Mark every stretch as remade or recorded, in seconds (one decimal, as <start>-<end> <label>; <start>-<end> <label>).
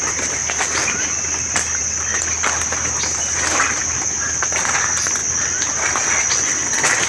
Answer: 0.0-7.1 recorded